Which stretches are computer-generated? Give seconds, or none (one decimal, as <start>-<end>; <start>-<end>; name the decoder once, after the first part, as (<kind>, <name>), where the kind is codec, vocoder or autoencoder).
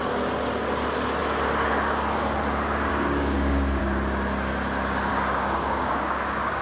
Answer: 2.9-3.8 (codec, DAC); 5.1-6.6